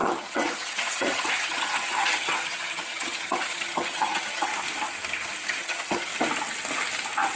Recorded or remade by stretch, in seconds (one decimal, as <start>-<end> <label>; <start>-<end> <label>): 0.0-4.5 remade; 4.5-5.6 recorded; 5.6-6.1 remade; 6.1-7.4 recorded